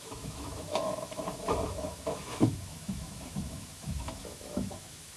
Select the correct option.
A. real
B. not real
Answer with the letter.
B